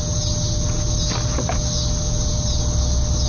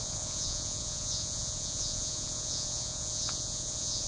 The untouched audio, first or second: first